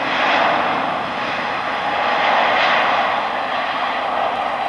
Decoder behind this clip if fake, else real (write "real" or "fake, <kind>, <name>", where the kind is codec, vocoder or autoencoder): real